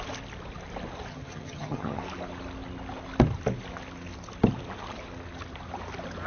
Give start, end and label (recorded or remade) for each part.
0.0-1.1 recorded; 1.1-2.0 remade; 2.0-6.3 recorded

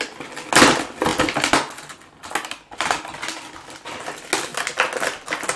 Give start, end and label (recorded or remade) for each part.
0.0-5.6 recorded

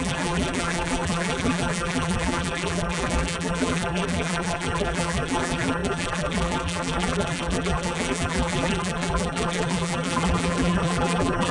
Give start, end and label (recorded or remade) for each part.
0.0-11.5 remade

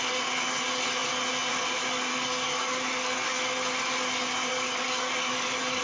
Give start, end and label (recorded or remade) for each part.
0.0-2.1 recorded; 2.1-3.4 remade; 3.4-4.5 recorded; 4.5-5.8 remade

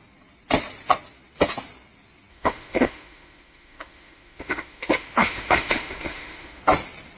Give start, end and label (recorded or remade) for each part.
0.0-2.3 recorded; 2.3-6.6 remade; 6.6-7.2 recorded